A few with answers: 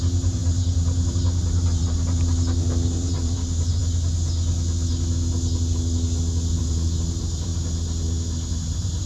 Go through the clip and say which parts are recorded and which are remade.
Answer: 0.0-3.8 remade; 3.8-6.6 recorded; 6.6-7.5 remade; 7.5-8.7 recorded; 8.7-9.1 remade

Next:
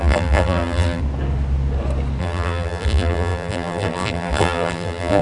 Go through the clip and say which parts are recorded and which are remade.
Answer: 0.0-1.0 remade; 1.0-2.2 recorded; 2.2-5.2 remade

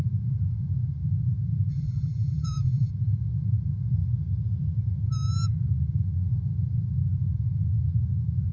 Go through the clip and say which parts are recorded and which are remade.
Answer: 0.0-1.7 recorded; 1.7-2.9 remade; 2.9-8.5 recorded

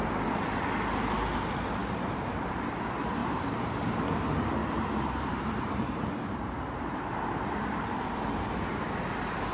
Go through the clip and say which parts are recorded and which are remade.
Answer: 0.0-3.2 recorded; 3.2-4.0 remade; 4.0-4.6 recorded; 4.6-7.9 remade; 7.9-9.5 recorded